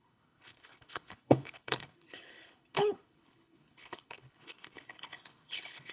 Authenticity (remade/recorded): remade